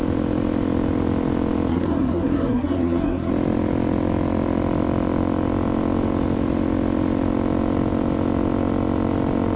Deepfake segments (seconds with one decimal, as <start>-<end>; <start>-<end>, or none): 1.7-3.3